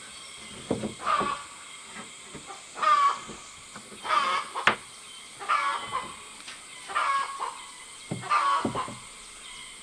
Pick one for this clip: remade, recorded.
recorded